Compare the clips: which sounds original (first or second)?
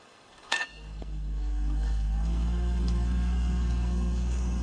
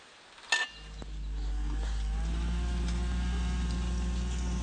second